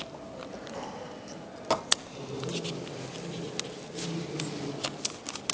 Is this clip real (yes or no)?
yes